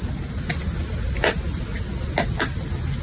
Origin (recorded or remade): recorded